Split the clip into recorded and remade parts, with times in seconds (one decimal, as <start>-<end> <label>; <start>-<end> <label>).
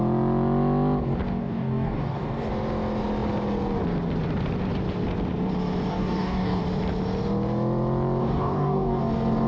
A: 0.0-1.4 recorded; 1.4-2.5 remade; 2.5-5.9 recorded; 5.9-6.6 remade; 6.6-8.2 recorded; 8.2-9.0 remade; 9.0-9.5 recorded